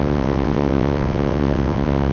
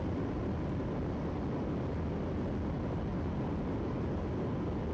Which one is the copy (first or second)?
first